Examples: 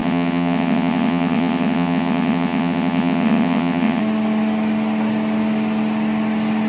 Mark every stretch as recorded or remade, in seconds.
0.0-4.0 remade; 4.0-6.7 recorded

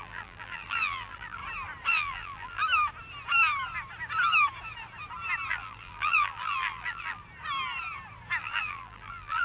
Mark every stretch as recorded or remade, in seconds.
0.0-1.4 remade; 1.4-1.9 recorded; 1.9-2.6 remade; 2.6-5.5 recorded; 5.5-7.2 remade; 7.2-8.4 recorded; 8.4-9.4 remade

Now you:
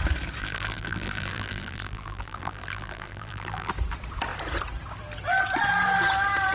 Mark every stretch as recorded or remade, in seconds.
0.0-0.4 recorded; 0.4-3.7 remade; 3.7-6.5 recorded

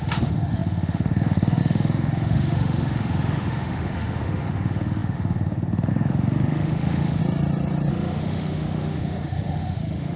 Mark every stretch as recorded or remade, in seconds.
0.0-7.2 remade; 7.2-7.9 recorded; 7.9-10.2 remade

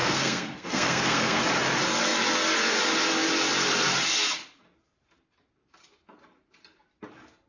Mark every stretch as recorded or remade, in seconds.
0.0-1.4 remade; 1.4-7.5 recorded